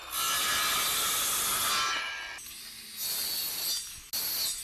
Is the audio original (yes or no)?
yes